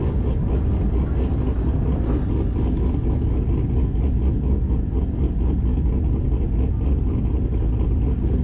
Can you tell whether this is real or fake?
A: real